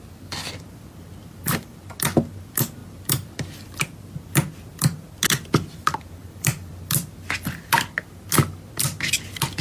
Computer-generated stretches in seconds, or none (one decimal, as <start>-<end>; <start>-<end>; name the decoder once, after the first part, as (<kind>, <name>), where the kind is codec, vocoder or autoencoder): 2.8-4.1 (vocoder, BigVGAN v2); 6.2-6.7